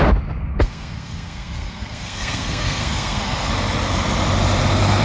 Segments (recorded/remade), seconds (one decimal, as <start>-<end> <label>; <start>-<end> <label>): 0.0-0.5 recorded; 0.5-3.5 remade; 3.5-5.0 recorded